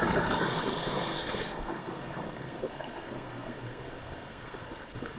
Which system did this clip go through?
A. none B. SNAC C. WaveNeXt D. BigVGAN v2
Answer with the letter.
B